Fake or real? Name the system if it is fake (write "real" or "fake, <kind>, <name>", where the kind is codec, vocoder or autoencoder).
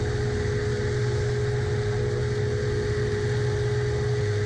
real